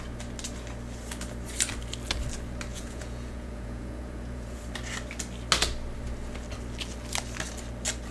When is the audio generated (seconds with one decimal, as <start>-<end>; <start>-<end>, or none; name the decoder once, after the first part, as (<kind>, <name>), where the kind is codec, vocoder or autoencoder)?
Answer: 2.7-4.6 (vocoder, Vocos)